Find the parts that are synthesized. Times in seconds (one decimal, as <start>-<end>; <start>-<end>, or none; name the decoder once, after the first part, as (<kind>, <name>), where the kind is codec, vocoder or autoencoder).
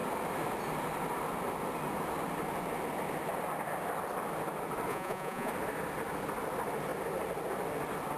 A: 4.9-5.5 (vocoder, Vocos)